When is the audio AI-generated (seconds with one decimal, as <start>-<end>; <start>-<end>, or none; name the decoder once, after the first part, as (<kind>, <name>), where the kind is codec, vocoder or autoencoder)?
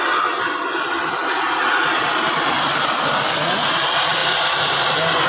none